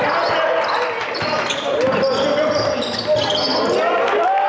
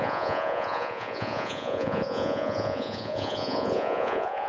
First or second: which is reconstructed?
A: second